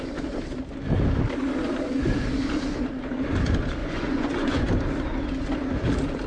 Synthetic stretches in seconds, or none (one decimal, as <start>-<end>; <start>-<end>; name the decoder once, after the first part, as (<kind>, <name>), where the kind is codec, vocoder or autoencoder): 3.8-4.7 (vocoder, Vocos)